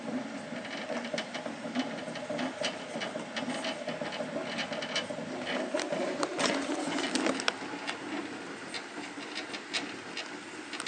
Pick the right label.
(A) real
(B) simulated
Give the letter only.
A